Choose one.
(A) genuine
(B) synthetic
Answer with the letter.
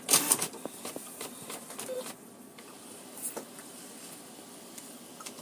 B